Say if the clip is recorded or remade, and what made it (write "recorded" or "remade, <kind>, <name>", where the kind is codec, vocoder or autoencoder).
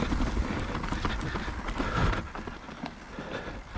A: recorded